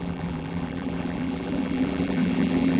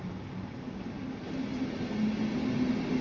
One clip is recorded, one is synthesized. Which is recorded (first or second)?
second